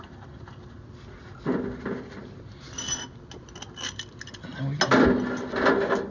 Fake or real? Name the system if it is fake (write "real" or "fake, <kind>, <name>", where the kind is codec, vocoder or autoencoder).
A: real